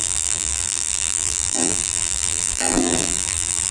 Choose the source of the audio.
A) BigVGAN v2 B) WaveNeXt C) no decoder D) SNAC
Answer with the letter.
A